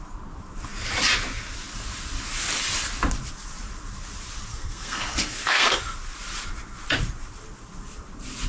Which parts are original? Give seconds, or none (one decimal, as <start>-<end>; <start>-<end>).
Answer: 0.0-4.5; 5.8-8.5